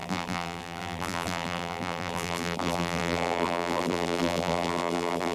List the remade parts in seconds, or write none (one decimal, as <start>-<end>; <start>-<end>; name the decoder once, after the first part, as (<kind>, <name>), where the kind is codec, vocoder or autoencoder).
0.0-5.3 (vocoder, BigVGAN v2)